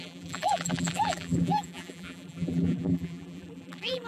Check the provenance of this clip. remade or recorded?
remade